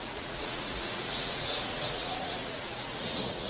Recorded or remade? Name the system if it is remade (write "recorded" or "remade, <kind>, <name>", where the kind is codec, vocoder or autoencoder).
remade, vocoder, Vocos